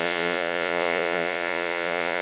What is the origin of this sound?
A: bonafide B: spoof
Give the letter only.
B